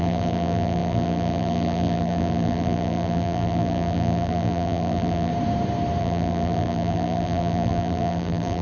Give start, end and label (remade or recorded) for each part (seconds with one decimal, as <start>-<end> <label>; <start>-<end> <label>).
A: 0.0-5.3 remade; 5.3-6.0 recorded; 6.0-8.6 remade